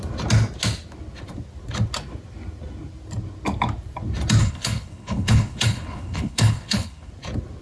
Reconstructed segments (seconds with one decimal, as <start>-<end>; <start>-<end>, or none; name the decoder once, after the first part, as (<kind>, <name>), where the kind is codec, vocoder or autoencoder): 4.4-7.1 (codec, HILCodec)